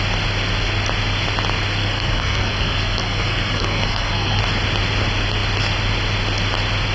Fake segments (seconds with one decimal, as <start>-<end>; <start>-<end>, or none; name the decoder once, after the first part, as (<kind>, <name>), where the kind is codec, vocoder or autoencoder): 1.8-4.4 (codec, SNAC)